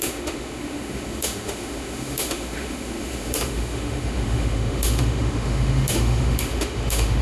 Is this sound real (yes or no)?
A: no